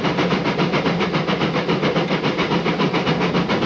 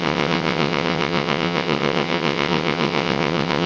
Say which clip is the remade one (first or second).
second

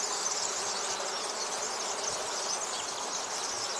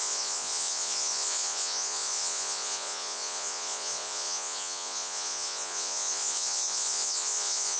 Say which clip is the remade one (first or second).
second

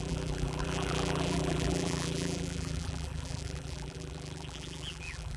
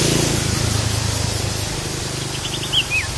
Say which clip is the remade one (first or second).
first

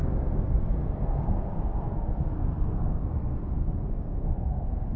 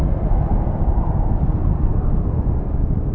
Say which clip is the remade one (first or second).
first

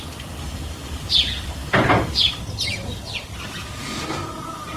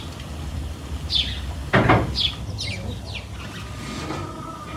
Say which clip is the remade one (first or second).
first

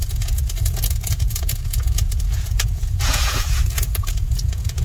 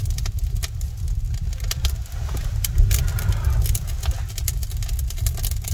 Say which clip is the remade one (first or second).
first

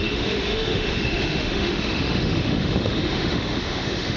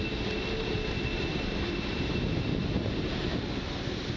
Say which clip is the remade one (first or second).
first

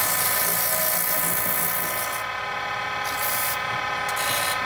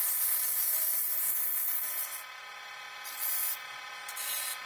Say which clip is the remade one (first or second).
first